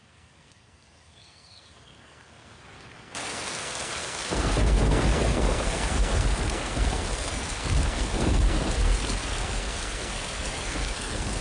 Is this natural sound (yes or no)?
no